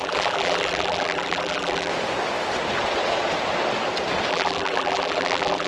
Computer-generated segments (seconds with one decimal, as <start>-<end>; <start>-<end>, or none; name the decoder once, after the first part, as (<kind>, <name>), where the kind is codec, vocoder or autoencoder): 0.0-1.9 (vocoder, BigVGAN v2); 4.3-5.7